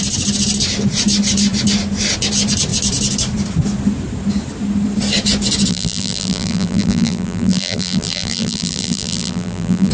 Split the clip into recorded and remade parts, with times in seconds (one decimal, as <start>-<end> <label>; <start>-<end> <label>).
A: 0.0-5.7 recorded; 5.7-9.9 remade